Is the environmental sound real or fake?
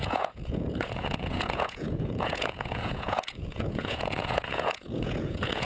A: fake